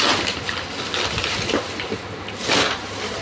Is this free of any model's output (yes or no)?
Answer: yes